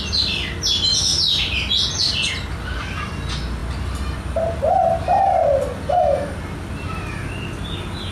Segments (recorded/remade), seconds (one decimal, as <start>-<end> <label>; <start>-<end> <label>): 0.0-8.1 recorded